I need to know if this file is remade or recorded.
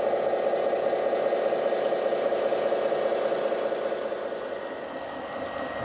recorded